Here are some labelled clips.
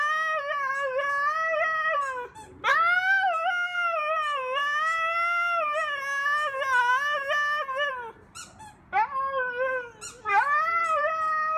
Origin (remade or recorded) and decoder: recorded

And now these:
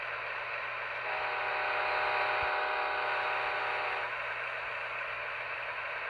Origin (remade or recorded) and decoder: recorded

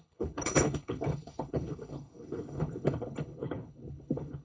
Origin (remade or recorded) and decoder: remade, codec, HILCodec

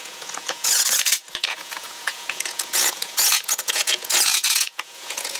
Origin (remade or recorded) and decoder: remade, vocoder, Vocos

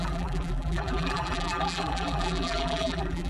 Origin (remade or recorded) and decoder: remade, vocoder, BigVGAN v2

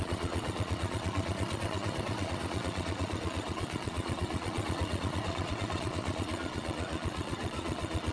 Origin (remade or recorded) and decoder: remade, vocoder, Vocos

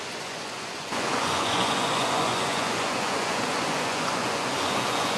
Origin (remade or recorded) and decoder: remade, vocoder, Vocos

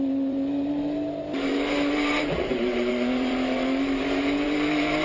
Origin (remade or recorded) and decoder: remade, vocoder, BigVGAN v2